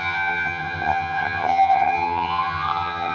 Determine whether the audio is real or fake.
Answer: fake